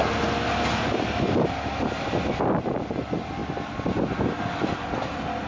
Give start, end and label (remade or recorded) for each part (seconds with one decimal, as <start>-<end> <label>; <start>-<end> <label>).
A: 0.0-5.5 recorded